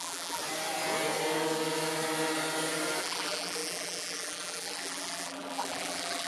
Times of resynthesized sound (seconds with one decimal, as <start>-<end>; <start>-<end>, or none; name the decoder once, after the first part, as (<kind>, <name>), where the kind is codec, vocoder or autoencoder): 0.0-0.4 (vocoder, BigVGAN v2); 3.0-6.3